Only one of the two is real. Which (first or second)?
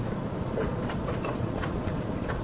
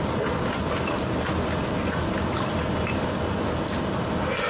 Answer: second